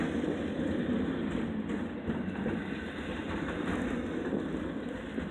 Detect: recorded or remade recorded